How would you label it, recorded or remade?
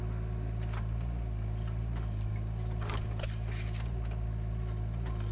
recorded